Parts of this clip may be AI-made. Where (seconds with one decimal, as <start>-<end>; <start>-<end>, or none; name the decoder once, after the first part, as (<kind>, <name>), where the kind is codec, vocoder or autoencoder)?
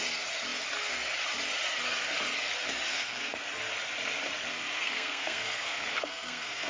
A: 2.9-3.4 (codec, SNAC); 4.5-6.7